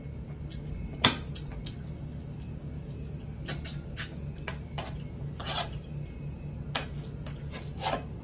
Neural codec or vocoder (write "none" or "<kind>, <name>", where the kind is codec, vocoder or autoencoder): none